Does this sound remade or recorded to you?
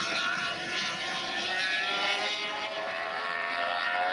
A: remade